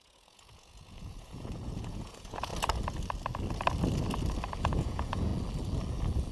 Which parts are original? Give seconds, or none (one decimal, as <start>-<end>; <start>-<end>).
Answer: 2.5-4.6; 5.3-6.3